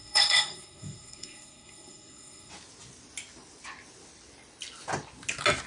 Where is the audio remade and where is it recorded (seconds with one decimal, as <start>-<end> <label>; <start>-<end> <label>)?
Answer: 0.0-2.5 remade; 2.5-5.7 recorded

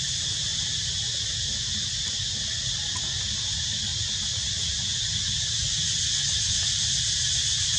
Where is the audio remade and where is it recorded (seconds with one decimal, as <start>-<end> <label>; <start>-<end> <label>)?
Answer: 0.0-7.8 recorded

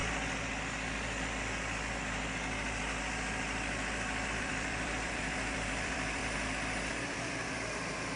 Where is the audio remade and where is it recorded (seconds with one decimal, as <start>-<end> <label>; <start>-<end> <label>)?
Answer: 0.0-4.4 recorded; 4.4-6.2 remade; 6.2-6.9 recorded; 6.9-8.2 remade

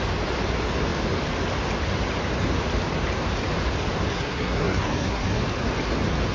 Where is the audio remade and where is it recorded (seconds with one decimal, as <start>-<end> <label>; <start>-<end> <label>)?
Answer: 0.0-4.1 recorded; 4.1-5.4 remade; 5.4-6.3 recorded

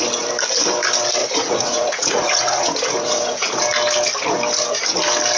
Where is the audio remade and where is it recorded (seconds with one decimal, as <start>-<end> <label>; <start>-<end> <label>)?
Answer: 0.0-1.2 recorded; 1.2-3.5 remade; 3.5-5.4 recorded

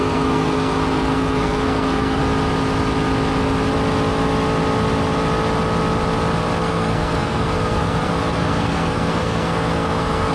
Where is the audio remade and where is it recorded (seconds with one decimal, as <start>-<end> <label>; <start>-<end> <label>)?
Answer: 0.0-2.2 remade; 2.2-6.6 recorded; 6.6-10.3 remade

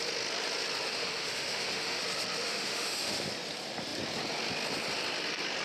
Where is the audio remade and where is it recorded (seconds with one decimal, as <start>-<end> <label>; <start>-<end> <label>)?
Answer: 0.0-0.9 recorded; 0.9-2.0 remade; 2.0-2.4 recorded; 2.4-3.3 remade; 3.3-5.6 recorded